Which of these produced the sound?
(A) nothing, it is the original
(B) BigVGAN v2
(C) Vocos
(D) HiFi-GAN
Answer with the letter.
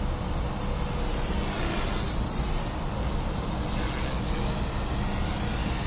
A